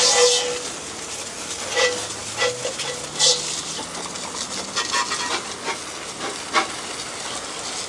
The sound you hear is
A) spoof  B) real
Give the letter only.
B